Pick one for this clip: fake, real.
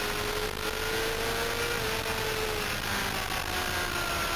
real